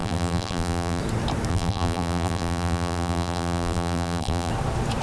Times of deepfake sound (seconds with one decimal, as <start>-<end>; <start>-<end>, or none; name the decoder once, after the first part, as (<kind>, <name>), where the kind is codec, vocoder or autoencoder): 0.0-1.0 (vocoder, BigVGAN v2); 1.5-4.5